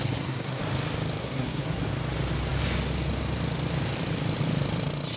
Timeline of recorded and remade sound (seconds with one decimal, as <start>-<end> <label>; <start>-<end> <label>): 0.0-0.6 remade; 0.6-1.2 recorded; 1.2-1.8 remade; 1.8-5.2 recorded